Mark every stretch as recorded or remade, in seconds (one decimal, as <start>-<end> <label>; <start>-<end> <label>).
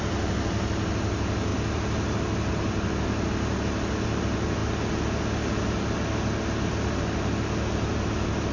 0.0-8.5 recorded